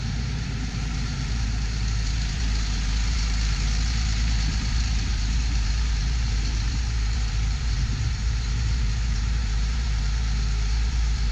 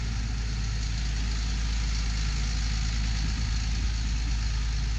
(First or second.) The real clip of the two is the second